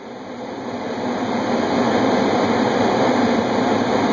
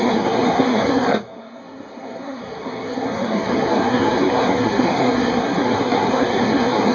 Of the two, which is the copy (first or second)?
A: second